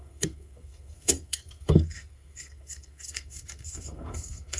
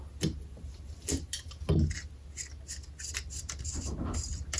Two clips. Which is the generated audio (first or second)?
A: first